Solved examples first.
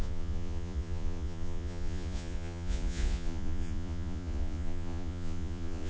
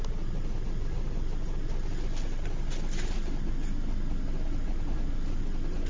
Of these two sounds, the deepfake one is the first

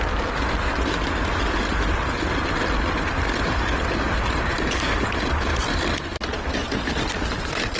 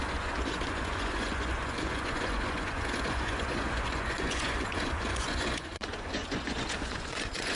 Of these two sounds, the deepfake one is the second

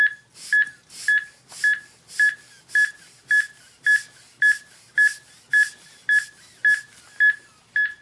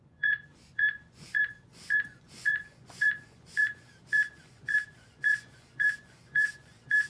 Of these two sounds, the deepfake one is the second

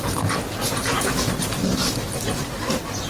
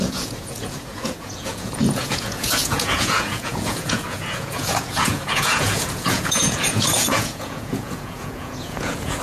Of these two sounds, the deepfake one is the second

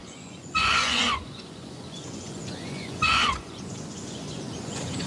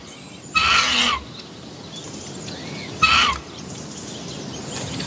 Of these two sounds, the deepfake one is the first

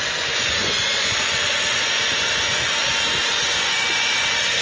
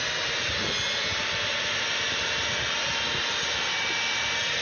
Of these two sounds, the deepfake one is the first